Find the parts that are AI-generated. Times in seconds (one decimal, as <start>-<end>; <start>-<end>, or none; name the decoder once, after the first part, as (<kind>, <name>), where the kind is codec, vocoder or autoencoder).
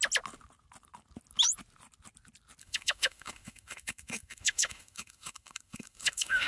2.6-6.5 (autoencoder, DAC-VAE)